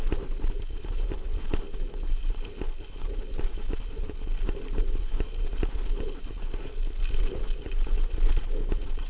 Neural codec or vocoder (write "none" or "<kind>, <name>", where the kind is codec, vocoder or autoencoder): none